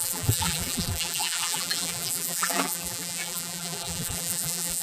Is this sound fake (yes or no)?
yes